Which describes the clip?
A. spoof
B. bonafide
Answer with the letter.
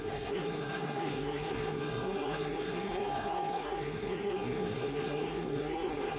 A